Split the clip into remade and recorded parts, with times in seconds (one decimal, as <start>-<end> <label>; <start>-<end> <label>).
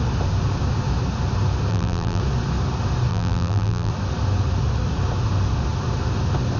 0.0-1.7 recorded; 1.7-2.2 remade; 2.2-3.1 recorded; 3.1-3.9 remade; 3.9-6.6 recorded